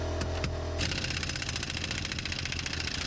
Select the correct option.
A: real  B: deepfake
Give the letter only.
A